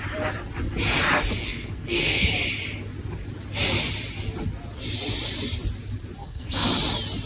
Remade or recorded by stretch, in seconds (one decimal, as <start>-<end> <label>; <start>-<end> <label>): 0.0-1.4 recorded; 1.4-2.3 remade; 2.3-6.2 recorded; 6.2-6.7 remade; 6.7-7.3 recorded